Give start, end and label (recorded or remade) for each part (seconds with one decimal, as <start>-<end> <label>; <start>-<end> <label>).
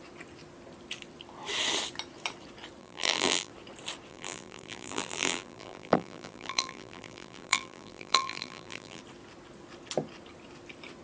0.0-2.8 recorded; 2.8-3.5 remade; 3.5-4.1 recorded; 4.1-9.0 remade; 9.0-11.0 recorded